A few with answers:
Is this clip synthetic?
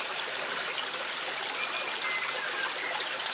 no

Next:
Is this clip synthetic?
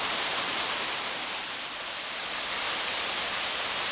yes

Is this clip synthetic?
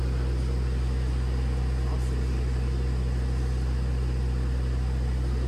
no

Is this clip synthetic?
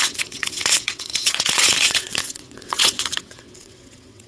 yes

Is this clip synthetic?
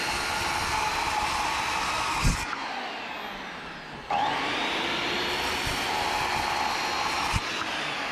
no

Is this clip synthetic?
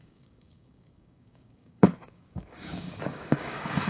yes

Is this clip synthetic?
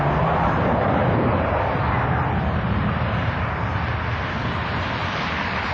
no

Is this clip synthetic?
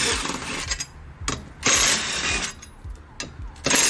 no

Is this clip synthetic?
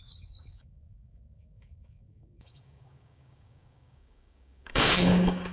yes